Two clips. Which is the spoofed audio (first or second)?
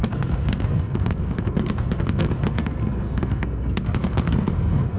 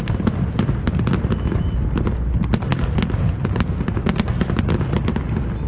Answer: first